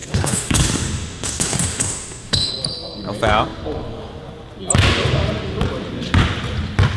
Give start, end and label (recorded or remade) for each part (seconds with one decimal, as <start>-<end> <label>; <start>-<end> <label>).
0.0-2.5 remade; 2.5-7.0 recorded